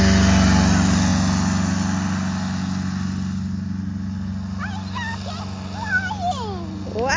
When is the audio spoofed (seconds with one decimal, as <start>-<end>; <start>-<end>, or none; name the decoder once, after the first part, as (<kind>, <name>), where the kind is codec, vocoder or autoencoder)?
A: none